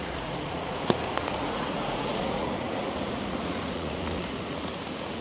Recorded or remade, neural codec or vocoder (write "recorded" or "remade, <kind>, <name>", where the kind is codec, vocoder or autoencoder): remade, vocoder, Vocos